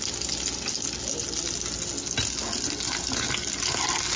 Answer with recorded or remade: recorded